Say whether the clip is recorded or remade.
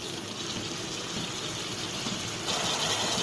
remade